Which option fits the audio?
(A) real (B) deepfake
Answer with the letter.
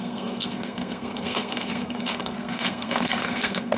B